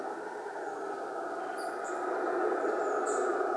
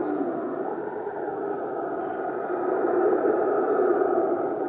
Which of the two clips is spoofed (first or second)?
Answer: second